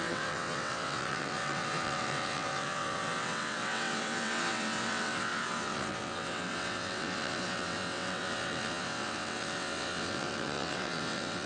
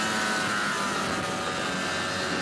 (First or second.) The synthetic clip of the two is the first